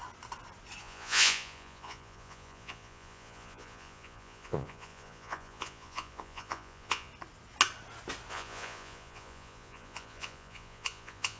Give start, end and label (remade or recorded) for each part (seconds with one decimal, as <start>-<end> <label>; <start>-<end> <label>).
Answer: 0.0-0.8 recorded; 0.8-7.1 remade; 7.1-8.3 recorded; 8.3-11.4 remade